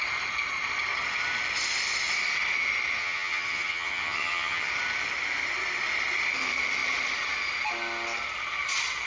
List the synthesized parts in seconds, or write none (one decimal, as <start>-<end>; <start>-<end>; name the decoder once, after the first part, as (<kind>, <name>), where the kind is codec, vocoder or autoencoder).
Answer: 3.0-4.7 (vocoder, HiFi-GAN)